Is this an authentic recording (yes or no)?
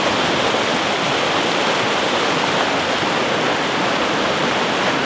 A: yes